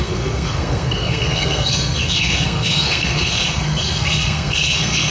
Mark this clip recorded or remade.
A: remade